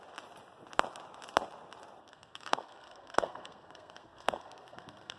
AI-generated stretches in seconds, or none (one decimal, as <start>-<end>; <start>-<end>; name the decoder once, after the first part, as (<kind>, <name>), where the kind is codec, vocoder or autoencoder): 2.0-5.2 (codec, SNAC)